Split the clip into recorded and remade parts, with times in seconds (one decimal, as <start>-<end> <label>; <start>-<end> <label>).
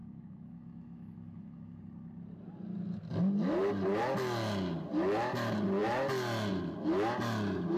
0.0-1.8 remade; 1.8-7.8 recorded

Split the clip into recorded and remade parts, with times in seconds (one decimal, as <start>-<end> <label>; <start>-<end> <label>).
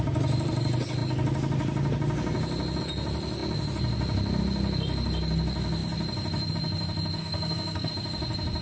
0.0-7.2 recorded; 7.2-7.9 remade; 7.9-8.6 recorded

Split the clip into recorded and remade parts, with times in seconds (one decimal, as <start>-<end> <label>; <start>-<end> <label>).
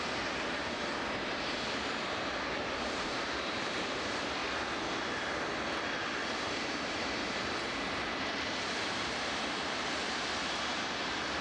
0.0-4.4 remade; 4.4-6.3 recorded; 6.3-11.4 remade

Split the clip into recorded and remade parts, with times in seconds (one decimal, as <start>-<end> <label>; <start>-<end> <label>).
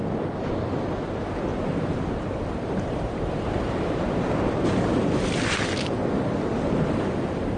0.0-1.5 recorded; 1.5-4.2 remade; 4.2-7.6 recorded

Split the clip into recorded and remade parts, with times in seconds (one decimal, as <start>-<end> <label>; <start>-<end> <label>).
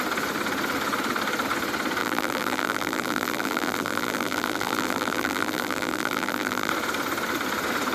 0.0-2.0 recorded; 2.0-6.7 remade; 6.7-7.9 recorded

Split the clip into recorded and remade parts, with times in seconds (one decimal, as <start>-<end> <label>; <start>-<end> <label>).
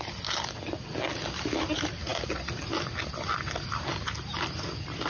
0.0-5.1 recorded